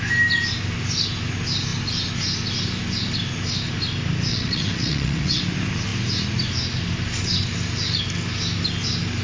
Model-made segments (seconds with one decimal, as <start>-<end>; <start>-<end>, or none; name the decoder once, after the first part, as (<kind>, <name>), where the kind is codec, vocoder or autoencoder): 4.3-5.4 (vocoder, WaveNeXt)

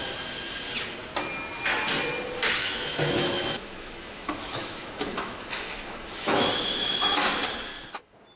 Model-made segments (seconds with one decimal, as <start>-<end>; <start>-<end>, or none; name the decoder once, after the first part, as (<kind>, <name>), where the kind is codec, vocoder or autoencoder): 2.6-7.2 (autoencoder, DAC-VAE)

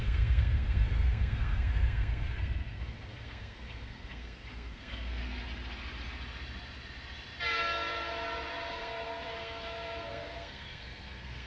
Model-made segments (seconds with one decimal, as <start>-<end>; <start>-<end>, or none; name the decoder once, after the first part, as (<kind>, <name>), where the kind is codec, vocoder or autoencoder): 0.0-5.2 (codec, SNAC); 8.7-11.5